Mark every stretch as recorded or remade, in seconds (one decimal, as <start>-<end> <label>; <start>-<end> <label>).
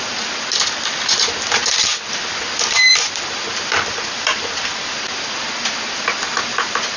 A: 0.0-2.9 recorded; 2.9-4.9 remade; 4.9-7.0 recorded